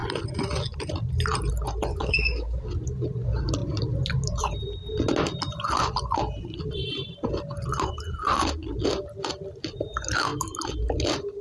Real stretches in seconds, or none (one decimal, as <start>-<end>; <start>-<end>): 0.0-1.9; 2.6-11.4